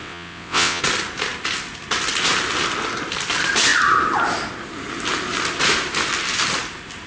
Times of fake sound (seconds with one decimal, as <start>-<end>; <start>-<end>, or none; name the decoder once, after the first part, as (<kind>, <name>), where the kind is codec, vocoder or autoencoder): 0.0-0.8 (vocoder, WaveNeXt)